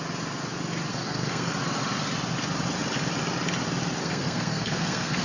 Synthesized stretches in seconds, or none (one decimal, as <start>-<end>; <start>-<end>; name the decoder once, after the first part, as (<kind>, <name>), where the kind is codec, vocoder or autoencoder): 0.9-1.5 (codec, SNAC); 4.0-5.2